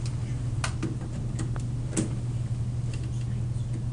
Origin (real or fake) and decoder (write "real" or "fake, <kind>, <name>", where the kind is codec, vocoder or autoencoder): real